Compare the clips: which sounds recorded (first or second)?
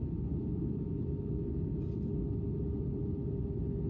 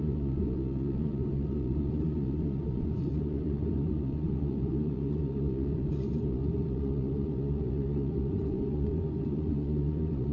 first